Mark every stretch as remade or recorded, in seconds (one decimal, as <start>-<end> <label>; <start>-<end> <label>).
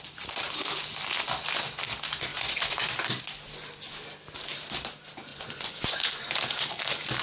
0.0-2.3 recorded; 2.3-2.9 remade; 2.9-5.3 recorded; 5.3-6.3 remade; 6.3-7.2 recorded